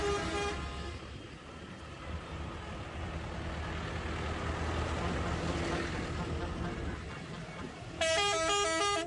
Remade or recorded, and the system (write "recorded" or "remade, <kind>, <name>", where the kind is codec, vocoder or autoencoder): recorded